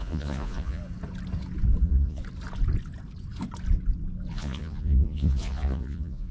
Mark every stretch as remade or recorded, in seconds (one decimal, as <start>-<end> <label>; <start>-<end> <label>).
0.0-0.8 remade; 0.8-1.8 recorded; 1.8-2.2 remade; 2.2-4.3 recorded; 4.3-6.3 remade